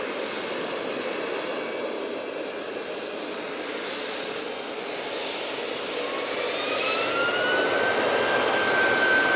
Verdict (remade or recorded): recorded